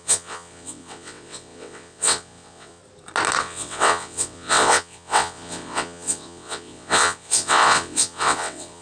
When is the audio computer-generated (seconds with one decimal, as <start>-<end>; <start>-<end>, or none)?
0.0-2.8; 3.4-8.8